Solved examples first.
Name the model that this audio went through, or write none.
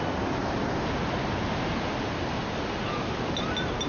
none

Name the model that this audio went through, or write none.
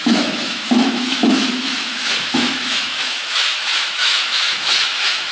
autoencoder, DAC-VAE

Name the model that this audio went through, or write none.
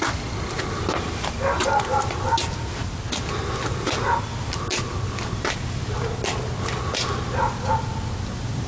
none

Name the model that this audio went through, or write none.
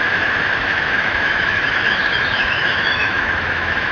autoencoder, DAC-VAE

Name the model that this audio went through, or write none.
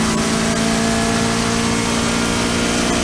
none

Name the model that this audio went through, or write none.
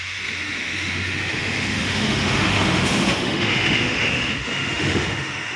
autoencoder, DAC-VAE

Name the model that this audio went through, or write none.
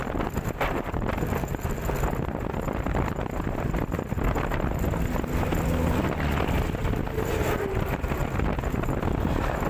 none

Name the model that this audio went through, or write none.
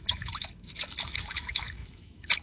autoencoder, DAC-VAE